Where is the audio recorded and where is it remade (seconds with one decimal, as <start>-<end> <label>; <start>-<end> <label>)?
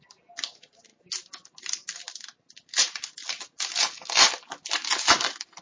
0.0-5.6 recorded